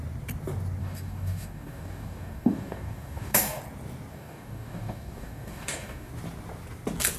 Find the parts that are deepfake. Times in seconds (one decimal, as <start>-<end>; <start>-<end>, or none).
0.8-3.6; 4.1-6.1